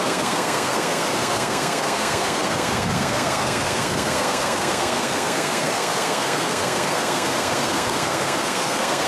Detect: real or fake fake